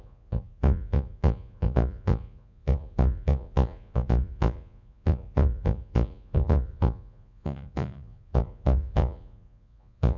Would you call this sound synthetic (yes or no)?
yes